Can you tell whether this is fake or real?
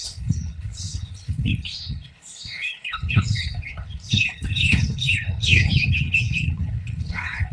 fake